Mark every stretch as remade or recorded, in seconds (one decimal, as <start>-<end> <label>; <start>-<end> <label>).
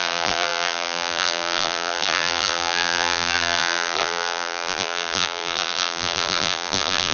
0.0-7.1 remade